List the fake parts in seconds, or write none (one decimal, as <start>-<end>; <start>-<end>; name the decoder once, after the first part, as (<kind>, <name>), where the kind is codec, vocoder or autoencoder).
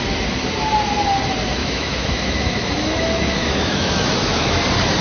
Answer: 1.6-4.6 (autoencoder, DAC-VAE)